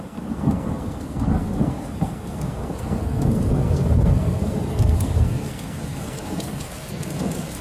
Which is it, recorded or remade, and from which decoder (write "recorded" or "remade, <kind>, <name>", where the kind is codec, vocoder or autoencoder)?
remade, codec, SNAC